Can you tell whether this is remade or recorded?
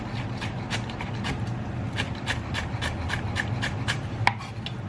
recorded